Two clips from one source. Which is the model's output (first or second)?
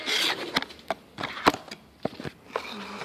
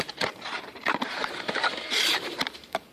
second